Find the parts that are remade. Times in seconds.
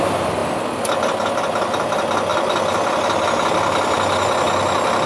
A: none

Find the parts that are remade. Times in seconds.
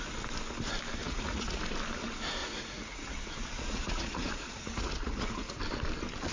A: 1.0-1.6 (vocoder, Vocos); 2.4-5.5